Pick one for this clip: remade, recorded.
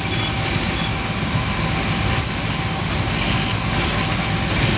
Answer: recorded